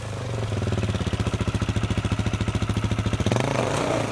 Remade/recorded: recorded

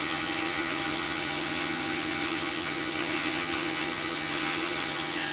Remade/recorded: remade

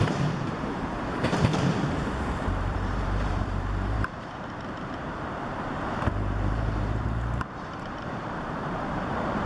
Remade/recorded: remade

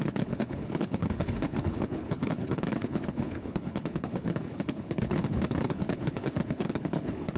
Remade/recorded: remade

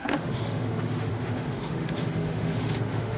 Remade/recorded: remade